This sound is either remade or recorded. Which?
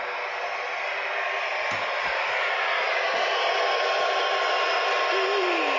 recorded